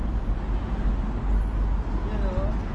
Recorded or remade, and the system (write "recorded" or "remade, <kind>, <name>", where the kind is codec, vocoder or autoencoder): recorded